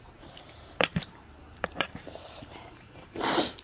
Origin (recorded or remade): remade